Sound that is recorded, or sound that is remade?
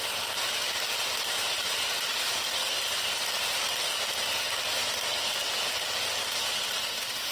recorded